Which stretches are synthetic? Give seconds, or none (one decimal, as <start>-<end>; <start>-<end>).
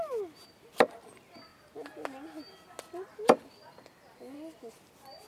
none